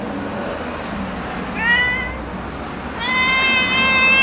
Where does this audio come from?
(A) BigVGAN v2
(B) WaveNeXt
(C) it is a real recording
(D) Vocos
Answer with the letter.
C